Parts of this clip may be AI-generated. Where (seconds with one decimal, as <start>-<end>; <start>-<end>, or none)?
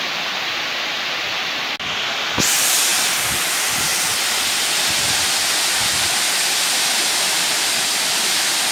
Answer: none